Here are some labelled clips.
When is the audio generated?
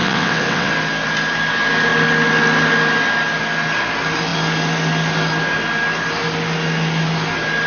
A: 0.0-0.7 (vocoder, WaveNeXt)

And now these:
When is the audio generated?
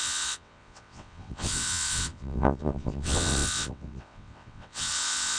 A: 0.0-5.4 (vocoder, WaveNeXt)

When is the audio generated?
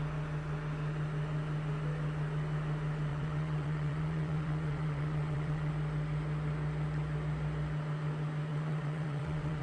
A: 3.1-5.7 (vocoder, WaveNeXt); 8.5-9.6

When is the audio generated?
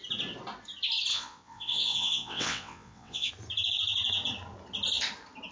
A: 1.1-3.3 (vocoder, WaveNeXt)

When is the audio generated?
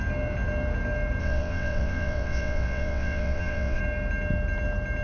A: 1.2-3.8 (vocoder, WaveNeXt)